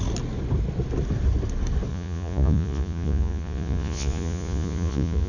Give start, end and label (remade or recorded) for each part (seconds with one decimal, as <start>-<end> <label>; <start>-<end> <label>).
0.0-1.9 recorded; 1.9-5.3 remade